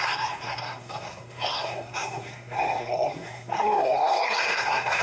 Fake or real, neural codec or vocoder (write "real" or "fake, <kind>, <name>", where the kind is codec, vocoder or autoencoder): fake, codec, SNAC